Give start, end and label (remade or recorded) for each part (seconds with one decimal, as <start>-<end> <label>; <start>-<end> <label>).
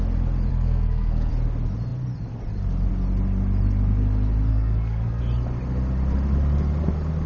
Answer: 0.0-0.5 recorded; 0.5-1.3 remade; 1.3-4.5 recorded; 4.5-5.2 remade; 5.2-7.3 recorded